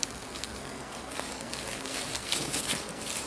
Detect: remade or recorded remade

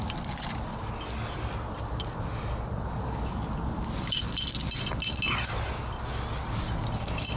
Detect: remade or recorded recorded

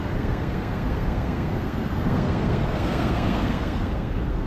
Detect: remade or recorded remade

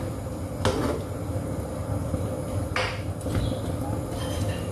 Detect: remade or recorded recorded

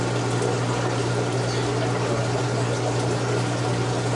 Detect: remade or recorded recorded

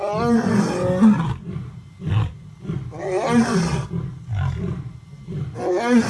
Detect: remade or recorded recorded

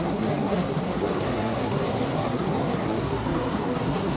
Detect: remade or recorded remade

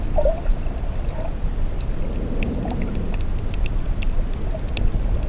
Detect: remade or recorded recorded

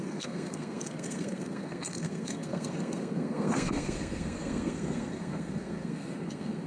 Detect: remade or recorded remade